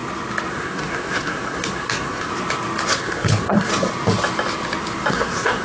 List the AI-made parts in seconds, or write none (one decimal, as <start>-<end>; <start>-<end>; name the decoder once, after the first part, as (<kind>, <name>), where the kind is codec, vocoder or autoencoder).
0.5-2.3 (codec, SNAC); 2.9-3.7; 5.1-5.6